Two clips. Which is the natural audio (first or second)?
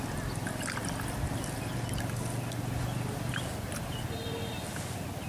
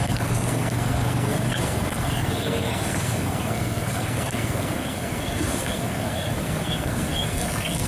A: first